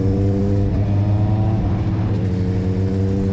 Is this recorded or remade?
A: recorded